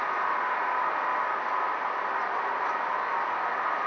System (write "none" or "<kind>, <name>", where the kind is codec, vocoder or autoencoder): none